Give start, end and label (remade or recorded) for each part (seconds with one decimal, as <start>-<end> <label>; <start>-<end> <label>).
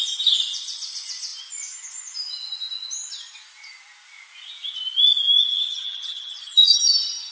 0.0-5.5 recorded; 5.5-6.8 remade; 6.8-7.3 recorded